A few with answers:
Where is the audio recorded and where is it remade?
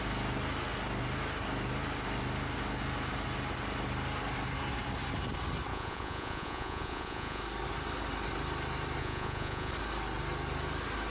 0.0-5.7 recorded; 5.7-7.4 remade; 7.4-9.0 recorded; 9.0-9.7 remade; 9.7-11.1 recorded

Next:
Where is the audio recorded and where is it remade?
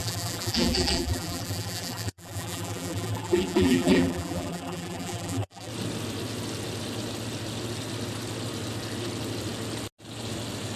0.0-5.7 remade; 5.7-10.8 recorded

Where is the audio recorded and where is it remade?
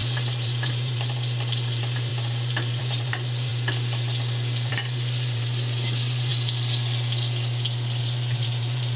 0.0-3.5 remade; 3.5-4.7 recorded; 4.7-6.3 remade; 6.3-8.0 recorded; 8.0-9.0 remade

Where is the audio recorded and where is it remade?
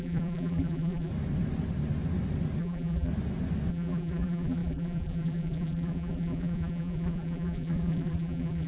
0.0-1.1 remade; 1.1-2.6 recorded; 2.6-3.1 remade; 3.1-3.7 recorded; 3.7-8.7 remade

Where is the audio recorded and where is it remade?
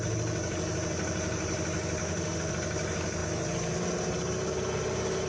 0.0-2.0 recorded; 2.0-2.5 remade; 2.5-5.3 recorded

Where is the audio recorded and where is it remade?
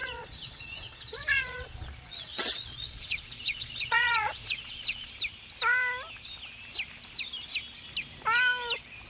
0.0-5.1 remade; 5.1-9.1 recorded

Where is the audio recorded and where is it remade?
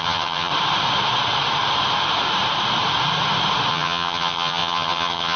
0.0-0.5 remade; 0.5-3.7 recorded; 3.7-5.4 remade